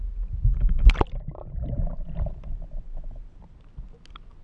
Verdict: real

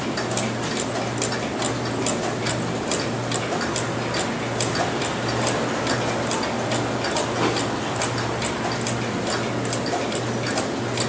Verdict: real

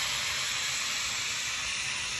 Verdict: real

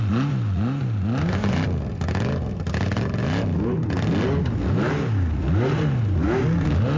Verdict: real